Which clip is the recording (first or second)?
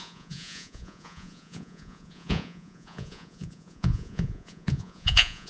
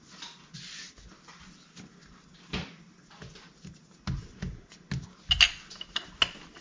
second